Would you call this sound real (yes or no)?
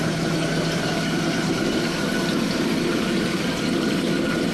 yes